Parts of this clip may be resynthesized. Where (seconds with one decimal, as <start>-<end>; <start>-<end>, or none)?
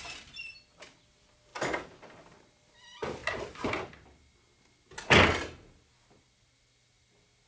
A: none